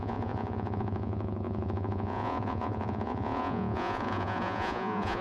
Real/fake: fake